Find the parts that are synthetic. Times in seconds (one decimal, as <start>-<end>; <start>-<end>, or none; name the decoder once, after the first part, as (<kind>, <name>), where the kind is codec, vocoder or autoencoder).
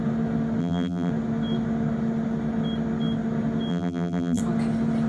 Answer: 0.6-1.1 (vocoder, BigVGAN v2); 3.7-4.4